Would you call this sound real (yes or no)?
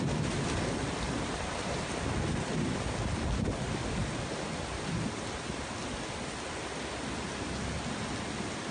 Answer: yes